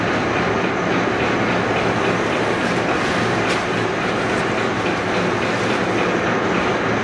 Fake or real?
real